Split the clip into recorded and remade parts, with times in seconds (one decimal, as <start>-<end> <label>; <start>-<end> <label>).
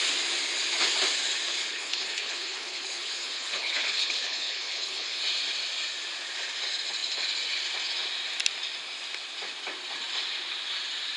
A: 0.0-1.5 recorded; 1.5-5.2 remade; 5.2-11.2 recorded